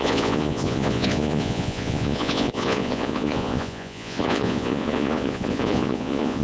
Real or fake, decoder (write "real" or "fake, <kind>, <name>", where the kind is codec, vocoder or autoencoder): fake, vocoder, Vocos